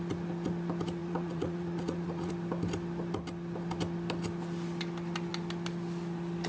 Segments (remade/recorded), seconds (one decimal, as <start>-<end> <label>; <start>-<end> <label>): 0.0-1.0 recorded; 1.0-2.3 remade; 2.3-6.5 recorded